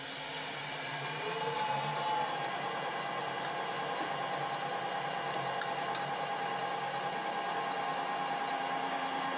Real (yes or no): yes